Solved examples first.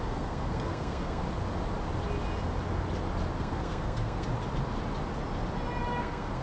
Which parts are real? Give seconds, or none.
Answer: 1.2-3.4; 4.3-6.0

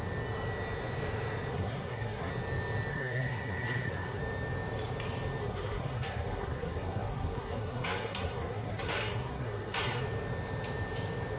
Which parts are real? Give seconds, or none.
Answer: 0.0-1.5; 2.3-2.9; 4.2-5.4; 10.0-11.4